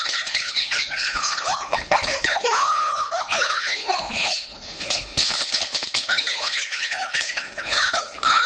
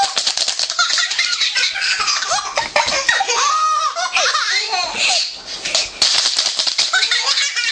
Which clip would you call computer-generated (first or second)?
first